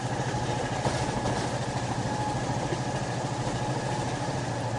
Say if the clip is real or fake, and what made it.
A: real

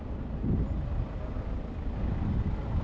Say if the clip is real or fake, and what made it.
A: real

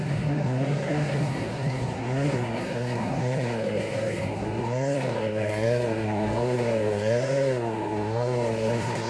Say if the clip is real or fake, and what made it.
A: fake, codec, SNAC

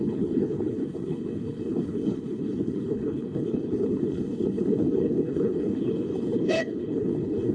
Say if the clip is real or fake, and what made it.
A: fake, codec, HILCodec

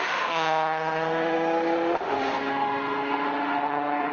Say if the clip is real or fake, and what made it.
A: fake, autoencoder, DAC-VAE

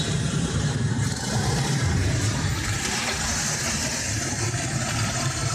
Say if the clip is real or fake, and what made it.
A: fake, vocoder, BigVGAN v2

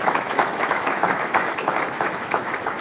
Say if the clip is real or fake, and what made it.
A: fake, autoencoder, DAC-VAE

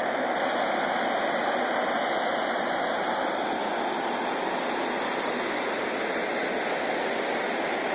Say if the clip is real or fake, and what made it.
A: real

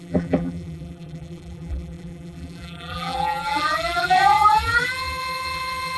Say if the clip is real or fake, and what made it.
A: fake, vocoder, BigVGAN v2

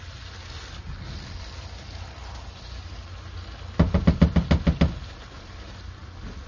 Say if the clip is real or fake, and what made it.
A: real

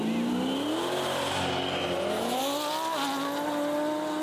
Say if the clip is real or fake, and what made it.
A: real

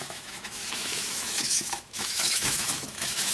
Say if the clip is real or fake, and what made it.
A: fake, autoencoder, DAC-VAE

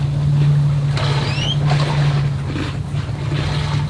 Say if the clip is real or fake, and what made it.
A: real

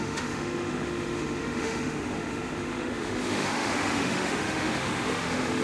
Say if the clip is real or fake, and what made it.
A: fake, autoencoder, DAC-VAE